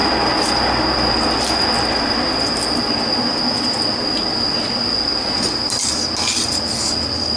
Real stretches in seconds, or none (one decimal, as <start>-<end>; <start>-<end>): 0.0-7.4